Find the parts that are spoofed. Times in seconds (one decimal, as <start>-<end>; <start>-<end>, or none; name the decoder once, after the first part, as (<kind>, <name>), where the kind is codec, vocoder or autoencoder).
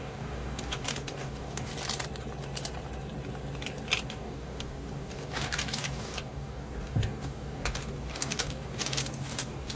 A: 0.0-1.7 (codec, DAC); 4.1-9.8